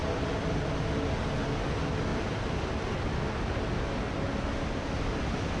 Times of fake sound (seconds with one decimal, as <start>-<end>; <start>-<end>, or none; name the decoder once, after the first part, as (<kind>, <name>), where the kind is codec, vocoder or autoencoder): 2.1-3.3 (vocoder, BigVGAN v2)

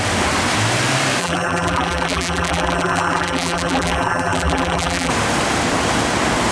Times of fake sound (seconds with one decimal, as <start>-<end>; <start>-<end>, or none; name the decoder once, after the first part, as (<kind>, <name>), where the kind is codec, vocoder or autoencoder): 1.2-5.1 (vocoder, BigVGAN v2)

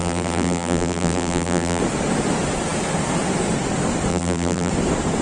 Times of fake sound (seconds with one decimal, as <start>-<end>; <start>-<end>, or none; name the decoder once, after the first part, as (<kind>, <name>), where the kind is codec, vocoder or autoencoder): 0.0-1.8 (vocoder, BigVGAN v2); 4.1-4.7

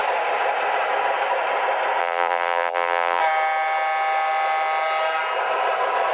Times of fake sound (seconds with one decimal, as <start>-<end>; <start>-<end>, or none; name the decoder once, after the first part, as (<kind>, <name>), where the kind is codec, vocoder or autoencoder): 2.0-3.2 (vocoder, BigVGAN v2)

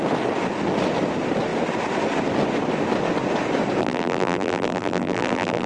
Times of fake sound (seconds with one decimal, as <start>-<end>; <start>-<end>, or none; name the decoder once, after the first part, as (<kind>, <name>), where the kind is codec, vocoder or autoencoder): 3.8-5.7 (vocoder, BigVGAN v2)

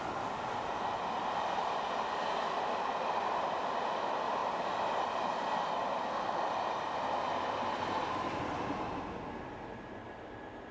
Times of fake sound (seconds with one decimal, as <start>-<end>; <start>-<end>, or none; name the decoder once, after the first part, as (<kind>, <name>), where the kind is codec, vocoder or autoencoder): none